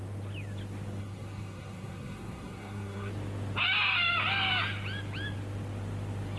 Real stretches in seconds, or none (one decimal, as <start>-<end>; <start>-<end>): 0.0-1.0; 3.1-6.4